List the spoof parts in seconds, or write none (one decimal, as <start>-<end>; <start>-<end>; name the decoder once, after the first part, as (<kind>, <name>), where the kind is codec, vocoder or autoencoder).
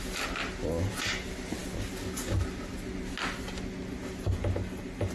none